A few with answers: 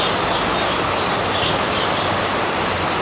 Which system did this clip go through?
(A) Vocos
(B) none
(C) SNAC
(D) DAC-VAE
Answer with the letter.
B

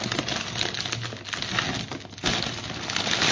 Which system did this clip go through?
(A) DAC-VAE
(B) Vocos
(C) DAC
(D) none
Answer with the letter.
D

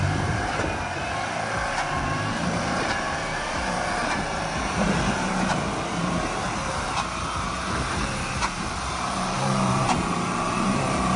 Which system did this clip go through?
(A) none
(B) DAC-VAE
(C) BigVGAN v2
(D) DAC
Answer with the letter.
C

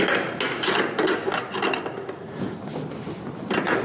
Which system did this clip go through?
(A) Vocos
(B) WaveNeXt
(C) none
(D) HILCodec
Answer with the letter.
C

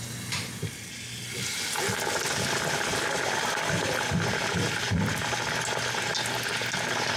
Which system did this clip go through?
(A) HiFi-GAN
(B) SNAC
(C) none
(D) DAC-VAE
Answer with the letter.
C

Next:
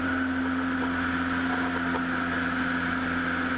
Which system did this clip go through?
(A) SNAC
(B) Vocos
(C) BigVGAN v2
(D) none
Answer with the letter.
D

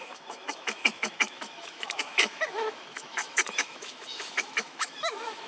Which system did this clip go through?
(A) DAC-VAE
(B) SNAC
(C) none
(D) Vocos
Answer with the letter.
A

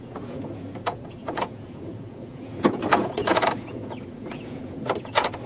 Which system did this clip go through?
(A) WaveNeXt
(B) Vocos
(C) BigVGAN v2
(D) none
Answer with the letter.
B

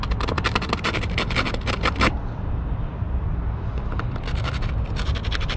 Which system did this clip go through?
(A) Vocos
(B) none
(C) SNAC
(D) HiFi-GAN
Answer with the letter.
B